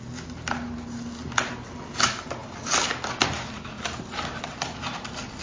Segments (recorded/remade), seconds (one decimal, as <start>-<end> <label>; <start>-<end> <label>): 0.0-5.4 recorded